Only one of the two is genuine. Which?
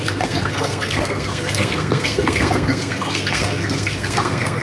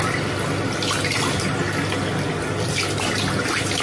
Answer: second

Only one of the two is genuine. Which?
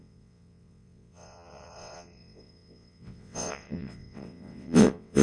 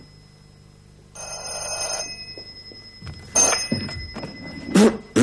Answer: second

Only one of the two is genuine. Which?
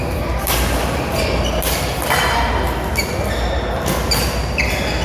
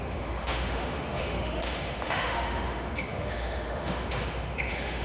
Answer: first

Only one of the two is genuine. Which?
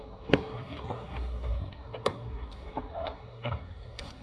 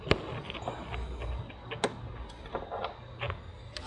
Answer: second